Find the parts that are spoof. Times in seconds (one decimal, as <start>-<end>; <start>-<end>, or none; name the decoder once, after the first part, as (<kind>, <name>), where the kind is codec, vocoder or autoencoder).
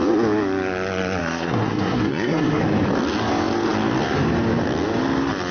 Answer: 1.2-2.6 (codec, SNAC)